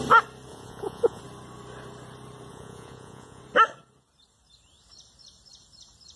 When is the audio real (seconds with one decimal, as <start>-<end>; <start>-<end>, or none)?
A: 0.0-0.5; 1.2-2.5; 3.4-6.2